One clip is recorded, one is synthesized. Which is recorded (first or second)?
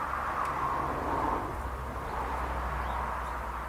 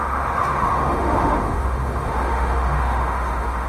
first